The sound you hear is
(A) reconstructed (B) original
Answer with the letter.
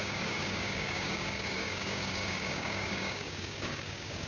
A